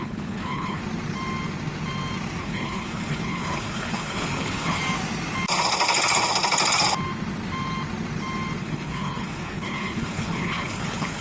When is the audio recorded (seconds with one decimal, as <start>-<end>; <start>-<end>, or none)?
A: 0.8-2.4; 4.8-8.6